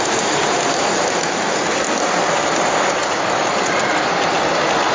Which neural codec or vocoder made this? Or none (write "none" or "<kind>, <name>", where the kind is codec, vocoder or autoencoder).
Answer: none